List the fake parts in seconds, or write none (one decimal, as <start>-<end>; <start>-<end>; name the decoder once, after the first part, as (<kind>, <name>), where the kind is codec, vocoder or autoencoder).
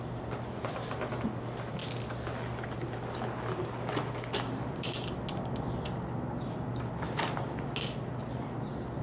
none